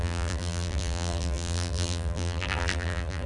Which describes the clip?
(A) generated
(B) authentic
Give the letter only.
A